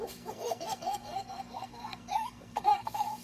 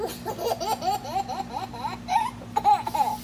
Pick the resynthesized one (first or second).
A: first